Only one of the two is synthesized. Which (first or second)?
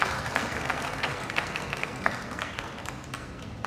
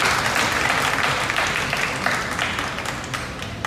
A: first